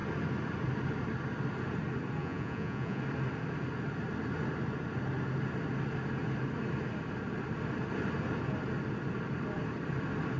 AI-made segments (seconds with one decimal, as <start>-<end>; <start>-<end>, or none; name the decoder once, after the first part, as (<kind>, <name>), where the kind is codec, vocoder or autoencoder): 2.2-3.0 (vocoder, Vocos)